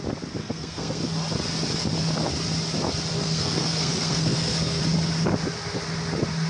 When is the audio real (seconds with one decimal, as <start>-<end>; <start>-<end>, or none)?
0.0-0.4; 1.0-3.1; 4.8-6.5

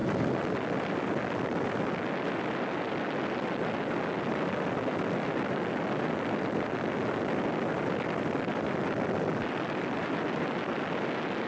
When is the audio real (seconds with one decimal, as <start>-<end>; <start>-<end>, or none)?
0.0-11.5